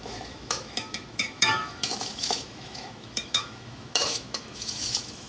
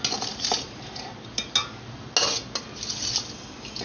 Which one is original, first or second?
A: second